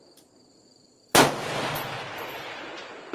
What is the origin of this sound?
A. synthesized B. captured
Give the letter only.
A